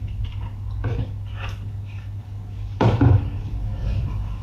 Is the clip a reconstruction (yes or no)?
yes